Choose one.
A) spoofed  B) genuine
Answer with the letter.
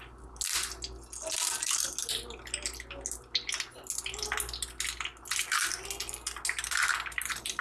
B